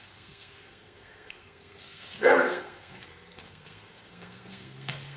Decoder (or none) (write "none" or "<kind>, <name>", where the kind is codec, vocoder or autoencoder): codec, SNAC